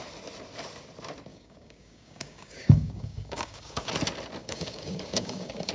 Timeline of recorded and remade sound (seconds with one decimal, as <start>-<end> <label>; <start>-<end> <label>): 0.0-1.3 recorded; 1.3-3.9 remade; 3.9-4.4 recorded; 4.4-5.7 remade